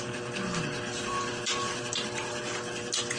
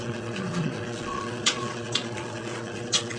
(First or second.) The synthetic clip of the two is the second